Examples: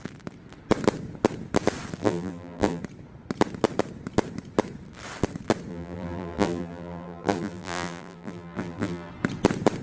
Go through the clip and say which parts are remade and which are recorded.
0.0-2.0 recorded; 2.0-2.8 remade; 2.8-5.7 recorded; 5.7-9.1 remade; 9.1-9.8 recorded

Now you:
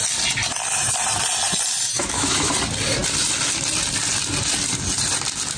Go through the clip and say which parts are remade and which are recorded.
0.0-1.9 recorded; 1.9-2.5 remade; 2.5-5.6 recorded

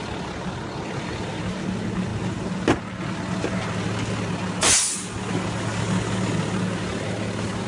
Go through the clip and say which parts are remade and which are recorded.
0.0-7.7 recorded